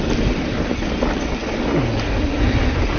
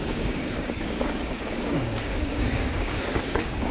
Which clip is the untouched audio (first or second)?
first